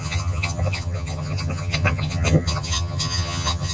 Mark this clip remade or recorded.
remade